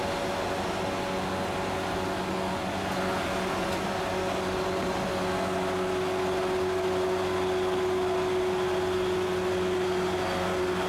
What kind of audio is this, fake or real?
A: real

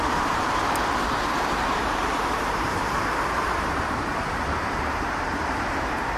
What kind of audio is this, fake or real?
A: fake